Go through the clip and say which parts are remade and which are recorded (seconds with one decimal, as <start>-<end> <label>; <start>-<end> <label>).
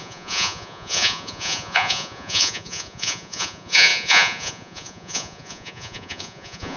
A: 0.0-6.8 remade